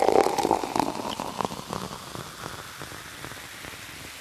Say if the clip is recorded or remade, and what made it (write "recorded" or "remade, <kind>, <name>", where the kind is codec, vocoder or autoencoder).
recorded